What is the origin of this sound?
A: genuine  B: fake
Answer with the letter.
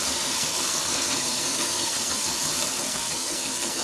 B